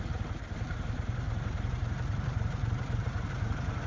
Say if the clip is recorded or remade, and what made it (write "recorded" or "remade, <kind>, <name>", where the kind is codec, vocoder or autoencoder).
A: remade, vocoder, BigVGAN v2